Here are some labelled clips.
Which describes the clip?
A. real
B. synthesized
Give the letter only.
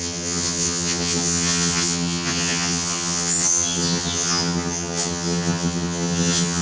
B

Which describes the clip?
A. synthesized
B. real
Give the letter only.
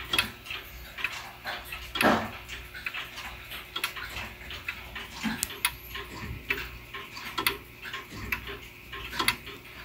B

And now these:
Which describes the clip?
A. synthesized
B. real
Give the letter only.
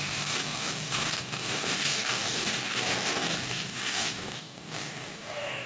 A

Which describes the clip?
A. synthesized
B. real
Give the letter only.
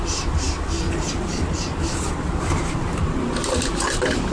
B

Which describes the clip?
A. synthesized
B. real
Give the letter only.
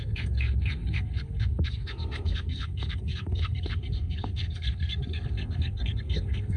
A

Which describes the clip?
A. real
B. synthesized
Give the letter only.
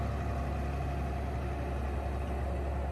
A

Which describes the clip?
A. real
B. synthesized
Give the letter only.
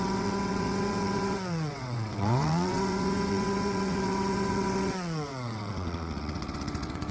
B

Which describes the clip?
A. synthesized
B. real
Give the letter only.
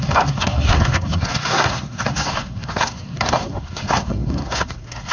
A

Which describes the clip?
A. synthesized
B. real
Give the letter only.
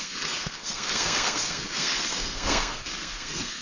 A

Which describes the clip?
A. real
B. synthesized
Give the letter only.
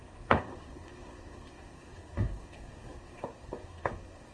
B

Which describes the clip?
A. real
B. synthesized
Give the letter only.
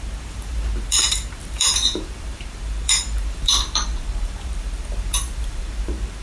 B